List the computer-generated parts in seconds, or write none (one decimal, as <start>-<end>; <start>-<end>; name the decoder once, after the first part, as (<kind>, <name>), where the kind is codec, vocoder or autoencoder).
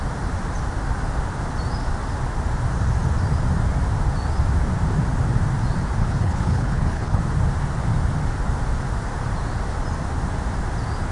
6.0-7.2 (codec, HILCodec)